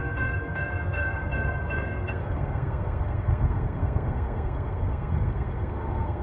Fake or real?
fake